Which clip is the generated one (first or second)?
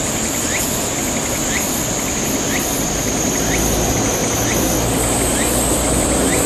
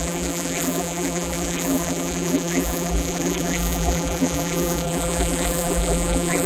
second